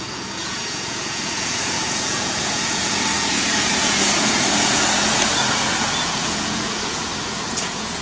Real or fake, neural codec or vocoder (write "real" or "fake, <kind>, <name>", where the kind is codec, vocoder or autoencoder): fake, vocoder, Vocos